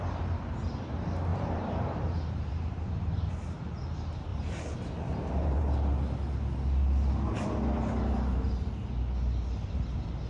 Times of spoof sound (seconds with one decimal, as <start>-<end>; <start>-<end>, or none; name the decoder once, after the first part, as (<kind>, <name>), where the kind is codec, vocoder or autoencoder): 1.3-3.3 (vocoder, BigVGAN v2); 4.3-5.6